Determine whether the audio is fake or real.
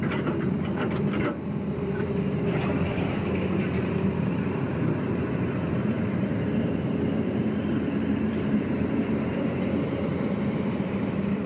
fake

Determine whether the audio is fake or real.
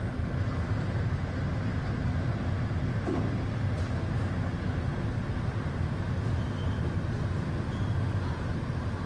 real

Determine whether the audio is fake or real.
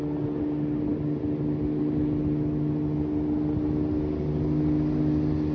real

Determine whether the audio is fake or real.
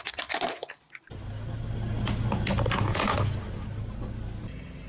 real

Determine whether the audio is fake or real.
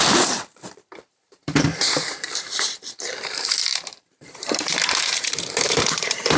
fake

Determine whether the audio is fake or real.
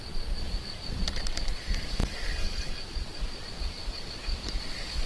real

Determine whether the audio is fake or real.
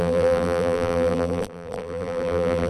fake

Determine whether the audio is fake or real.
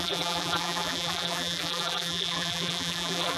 fake